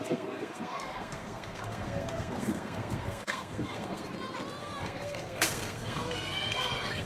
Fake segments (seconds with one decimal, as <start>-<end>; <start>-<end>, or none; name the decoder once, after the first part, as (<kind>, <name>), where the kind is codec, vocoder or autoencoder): 0.0-4.1 (codec, SNAC); 4.6-7.1